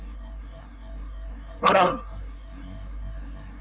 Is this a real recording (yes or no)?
no